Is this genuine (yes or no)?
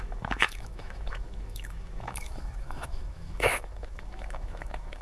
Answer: no